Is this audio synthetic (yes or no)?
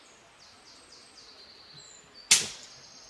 no